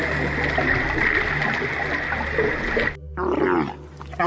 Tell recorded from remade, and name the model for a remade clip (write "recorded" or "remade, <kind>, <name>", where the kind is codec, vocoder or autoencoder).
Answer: recorded